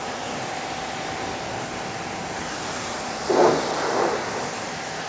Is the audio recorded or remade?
recorded